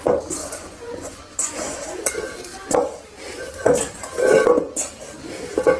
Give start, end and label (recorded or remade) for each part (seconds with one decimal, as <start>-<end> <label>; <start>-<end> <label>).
0.0-0.4 recorded; 0.4-2.1 remade; 2.1-5.8 recorded